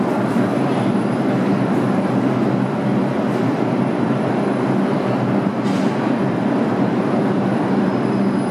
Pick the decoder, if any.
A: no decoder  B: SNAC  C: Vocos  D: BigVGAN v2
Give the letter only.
D